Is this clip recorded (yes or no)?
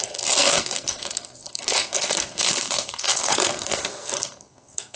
no